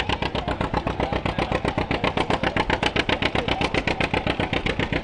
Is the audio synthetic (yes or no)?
no